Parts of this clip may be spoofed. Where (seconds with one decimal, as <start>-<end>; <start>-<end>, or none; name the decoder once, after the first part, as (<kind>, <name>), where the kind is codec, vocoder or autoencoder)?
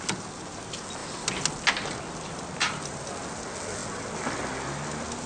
none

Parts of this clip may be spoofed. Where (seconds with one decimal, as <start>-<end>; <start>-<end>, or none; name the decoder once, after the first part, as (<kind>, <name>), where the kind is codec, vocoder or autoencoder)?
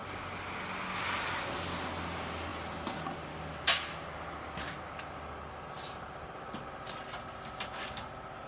none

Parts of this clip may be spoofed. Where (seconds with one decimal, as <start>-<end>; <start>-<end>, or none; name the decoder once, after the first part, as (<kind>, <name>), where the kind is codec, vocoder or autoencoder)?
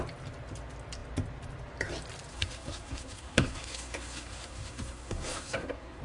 2.3-6.0 (codec, SNAC)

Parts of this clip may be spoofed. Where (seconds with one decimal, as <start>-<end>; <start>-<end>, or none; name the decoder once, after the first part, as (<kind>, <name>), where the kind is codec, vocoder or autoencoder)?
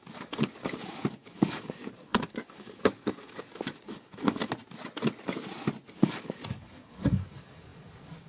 0.0-4.4 (codec, DAC); 5.9-8.3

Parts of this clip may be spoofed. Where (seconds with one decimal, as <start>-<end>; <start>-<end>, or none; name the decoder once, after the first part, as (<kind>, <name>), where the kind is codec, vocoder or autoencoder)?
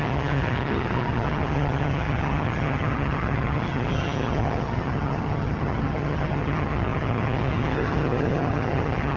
0.0-9.2 (vocoder, HiFi-GAN)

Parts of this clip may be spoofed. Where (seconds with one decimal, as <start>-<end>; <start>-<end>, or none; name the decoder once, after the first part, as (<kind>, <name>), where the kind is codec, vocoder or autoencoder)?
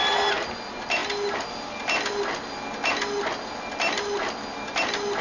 none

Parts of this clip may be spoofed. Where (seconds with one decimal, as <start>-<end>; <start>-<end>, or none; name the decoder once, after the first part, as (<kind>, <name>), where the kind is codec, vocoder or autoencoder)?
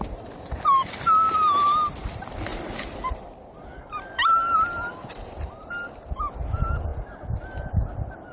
none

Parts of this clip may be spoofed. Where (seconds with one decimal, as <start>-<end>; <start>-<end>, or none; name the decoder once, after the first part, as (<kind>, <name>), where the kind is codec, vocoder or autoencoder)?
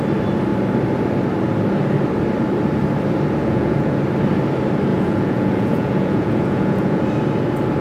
3.4-4.0 (vocoder, Vocos); 4.9-7.0